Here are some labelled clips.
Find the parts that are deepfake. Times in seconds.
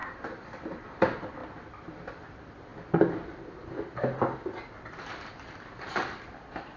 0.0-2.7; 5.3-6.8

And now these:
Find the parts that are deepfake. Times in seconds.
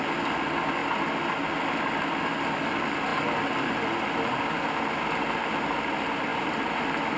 6.3-6.8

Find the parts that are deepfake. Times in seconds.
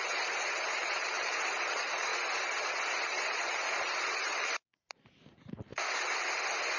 0.0-2.1; 2.9-5.7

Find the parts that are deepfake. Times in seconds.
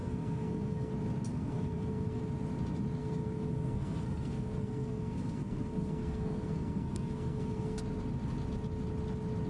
0.0-0.9; 1.3-2.2; 3.0-7.8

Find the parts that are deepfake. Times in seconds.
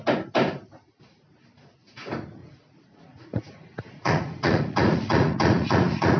2.4-6.2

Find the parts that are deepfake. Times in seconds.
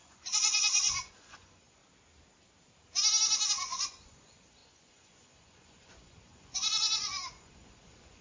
0.0-1.8; 3.5-8.2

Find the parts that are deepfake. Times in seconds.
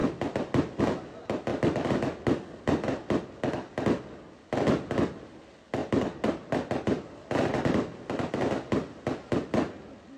5.8-9.3